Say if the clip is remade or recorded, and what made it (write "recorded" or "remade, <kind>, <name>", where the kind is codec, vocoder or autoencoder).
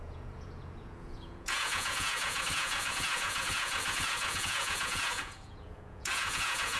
remade, vocoder, Vocos